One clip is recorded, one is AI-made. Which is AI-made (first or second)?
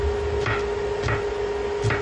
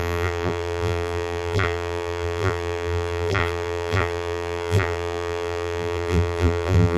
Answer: second